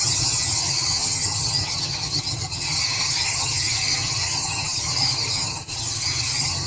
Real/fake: fake